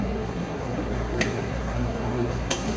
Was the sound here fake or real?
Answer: fake